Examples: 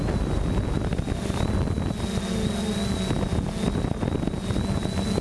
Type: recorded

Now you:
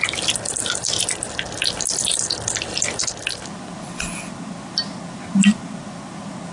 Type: recorded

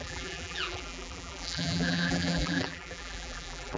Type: remade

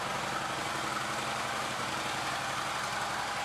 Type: recorded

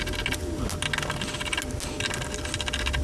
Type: recorded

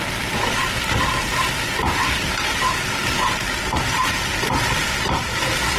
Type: recorded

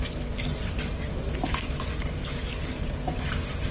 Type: remade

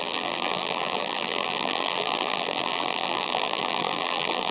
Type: remade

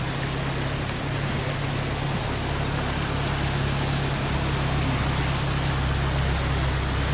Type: recorded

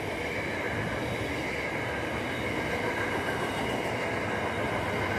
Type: recorded